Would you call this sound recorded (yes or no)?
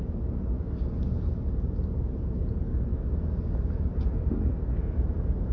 yes